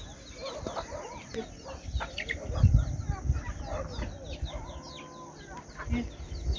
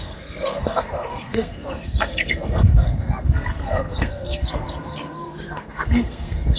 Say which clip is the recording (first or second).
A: first